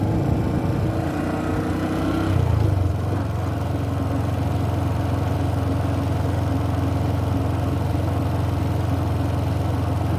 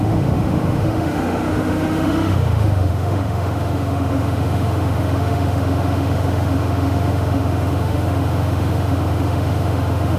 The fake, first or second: second